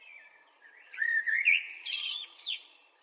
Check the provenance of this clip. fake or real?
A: fake